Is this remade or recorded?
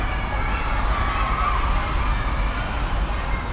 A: recorded